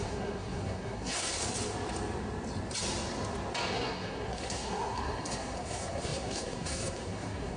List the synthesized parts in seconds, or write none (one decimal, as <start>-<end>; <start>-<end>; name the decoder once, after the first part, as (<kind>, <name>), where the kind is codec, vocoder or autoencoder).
0.0-1.4 (codec, SNAC); 3.7-7.6